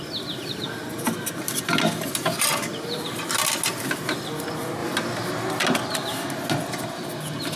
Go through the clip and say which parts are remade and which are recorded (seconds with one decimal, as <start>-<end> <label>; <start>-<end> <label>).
0.0-7.6 recorded